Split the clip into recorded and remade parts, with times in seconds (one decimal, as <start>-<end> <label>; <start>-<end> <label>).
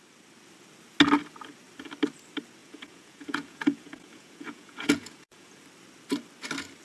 0.0-2.6 recorded; 2.6-5.6 remade; 5.6-6.8 recorded